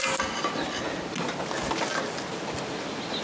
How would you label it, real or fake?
real